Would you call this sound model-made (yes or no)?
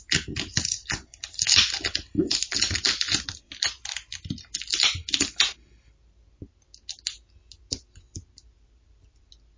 no